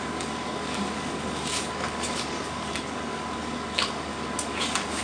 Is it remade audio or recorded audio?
remade